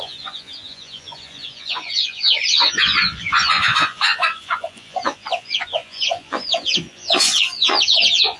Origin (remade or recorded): remade